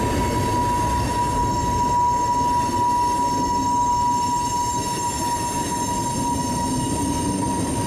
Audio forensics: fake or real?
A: real